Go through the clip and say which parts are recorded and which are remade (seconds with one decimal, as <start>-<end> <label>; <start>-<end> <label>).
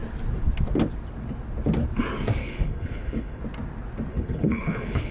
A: 0.0-2.4 recorded; 2.4-3.4 remade; 3.4-4.1 recorded; 4.1-5.1 remade